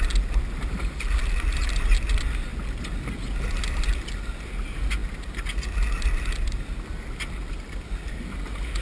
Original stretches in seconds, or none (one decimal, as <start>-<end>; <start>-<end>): 0.0-8.8